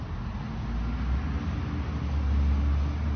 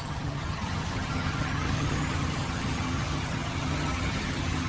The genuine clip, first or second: first